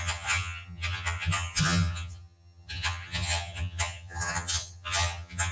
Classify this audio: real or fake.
fake